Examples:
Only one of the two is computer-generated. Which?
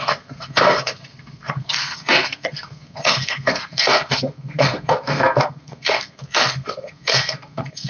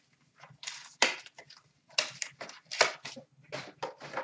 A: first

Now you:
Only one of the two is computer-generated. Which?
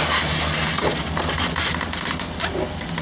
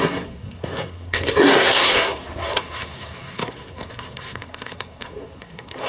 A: second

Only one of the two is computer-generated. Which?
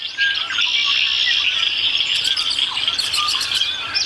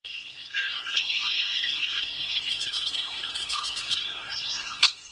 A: second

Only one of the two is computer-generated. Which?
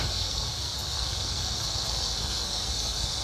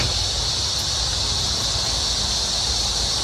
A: first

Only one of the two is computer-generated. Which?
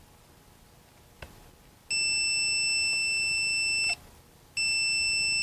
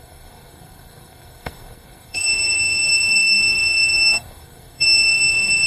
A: second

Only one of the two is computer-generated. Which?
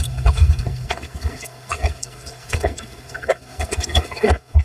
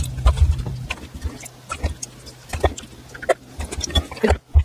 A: first